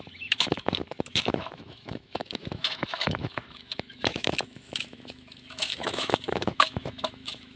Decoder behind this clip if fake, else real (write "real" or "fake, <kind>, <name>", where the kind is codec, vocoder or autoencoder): fake, autoencoder, DAC-VAE